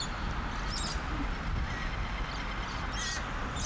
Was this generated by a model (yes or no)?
no